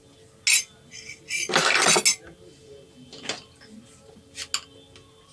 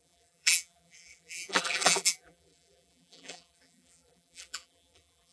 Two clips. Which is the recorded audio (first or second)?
first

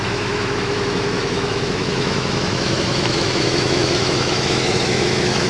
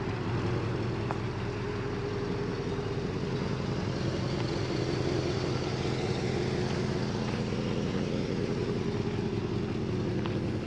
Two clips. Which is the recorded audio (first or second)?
second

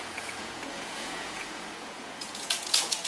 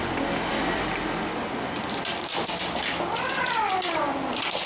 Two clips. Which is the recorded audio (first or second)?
second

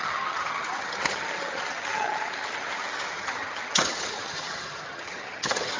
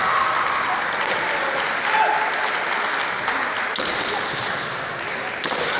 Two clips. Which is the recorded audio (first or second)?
second